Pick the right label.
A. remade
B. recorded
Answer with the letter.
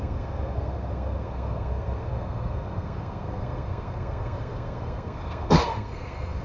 A